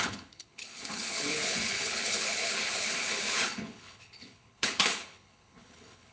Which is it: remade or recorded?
remade